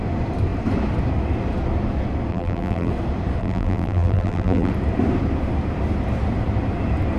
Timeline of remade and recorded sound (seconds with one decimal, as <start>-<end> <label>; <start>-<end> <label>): 0.0-2.3 recorded; 2.3-2.9 remade; 2.9-3.4 recorded; 3.4-4.7 remade; 4.7-7.2 recorded